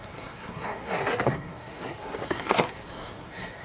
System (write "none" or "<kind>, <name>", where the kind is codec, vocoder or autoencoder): codec, SNAC